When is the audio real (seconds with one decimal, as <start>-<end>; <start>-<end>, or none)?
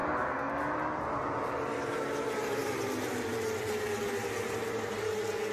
0.5-5.5